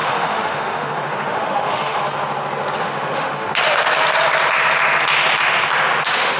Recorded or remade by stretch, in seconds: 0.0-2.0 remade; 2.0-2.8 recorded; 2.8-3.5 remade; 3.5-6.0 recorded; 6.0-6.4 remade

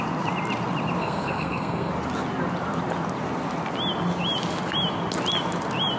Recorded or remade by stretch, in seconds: 0.0-1.0 recorded; 1.0-1.9 remade; 1.9-6.0 recorded

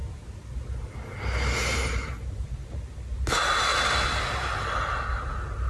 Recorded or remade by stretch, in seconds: 0.0-5.7 recorded

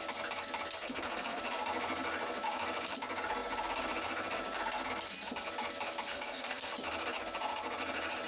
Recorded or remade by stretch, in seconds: 0.0-0.8 recorded; 0.8-1.4 remade; 1.4-6.1 recorded; 6.1-6.7 remade; 6.7-8.3 recorded